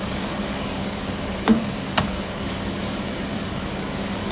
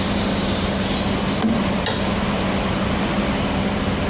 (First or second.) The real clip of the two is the second